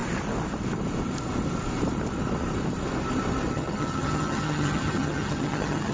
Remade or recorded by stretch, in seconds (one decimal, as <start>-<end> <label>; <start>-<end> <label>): 0.0-3.5 recorded; 3.5-5.9 remade